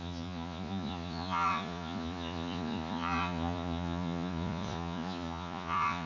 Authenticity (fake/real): fake